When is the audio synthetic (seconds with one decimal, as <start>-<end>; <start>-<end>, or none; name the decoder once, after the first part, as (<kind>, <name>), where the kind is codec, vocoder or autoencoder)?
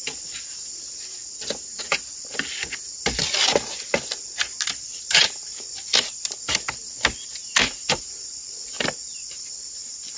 none